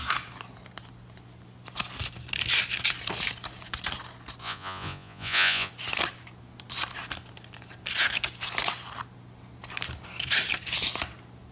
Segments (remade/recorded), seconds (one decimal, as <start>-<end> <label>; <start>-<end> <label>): 0.0-4.4 recorded; 4.4-5.7 remade; 5.7-11.5 recorded